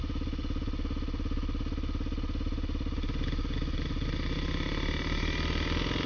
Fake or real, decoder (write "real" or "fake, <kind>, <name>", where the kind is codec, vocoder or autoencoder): real